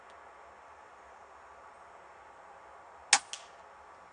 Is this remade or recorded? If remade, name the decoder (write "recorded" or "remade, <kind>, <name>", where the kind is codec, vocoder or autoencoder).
recorded